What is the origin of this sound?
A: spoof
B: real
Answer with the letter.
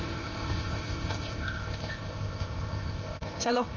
A